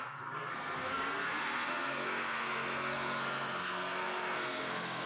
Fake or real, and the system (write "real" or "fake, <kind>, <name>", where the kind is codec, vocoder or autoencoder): fake, codec, SNAC